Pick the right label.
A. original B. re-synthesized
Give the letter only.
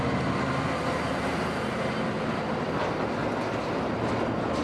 A